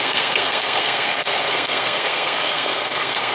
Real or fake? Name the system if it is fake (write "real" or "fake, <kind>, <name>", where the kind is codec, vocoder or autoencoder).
fake, codec, SNAC